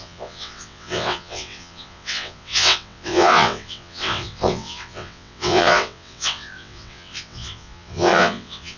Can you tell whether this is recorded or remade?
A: remade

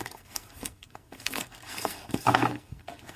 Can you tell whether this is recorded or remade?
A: remade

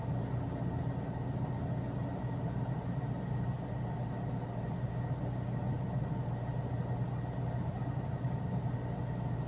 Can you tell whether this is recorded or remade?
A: recorded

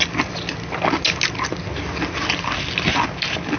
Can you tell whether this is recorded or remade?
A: recorded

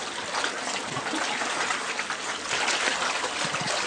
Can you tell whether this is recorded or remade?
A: recorded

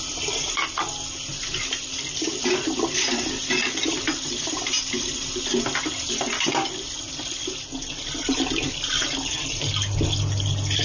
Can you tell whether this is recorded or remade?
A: recorded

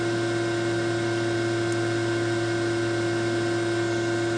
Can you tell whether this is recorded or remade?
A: recorded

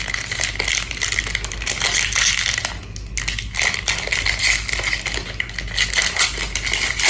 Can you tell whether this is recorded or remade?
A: recorded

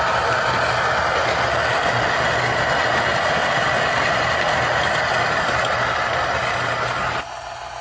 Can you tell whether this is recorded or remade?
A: recorded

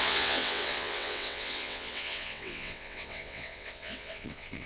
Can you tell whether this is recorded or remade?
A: remade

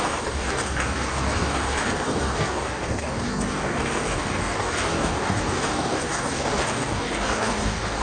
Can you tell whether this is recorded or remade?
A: remade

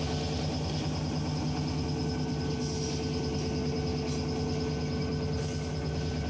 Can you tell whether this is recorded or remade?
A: recorded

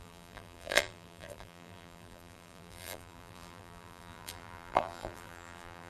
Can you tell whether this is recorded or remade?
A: remade